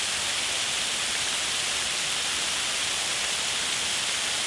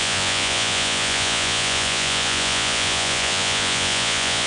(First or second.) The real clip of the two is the first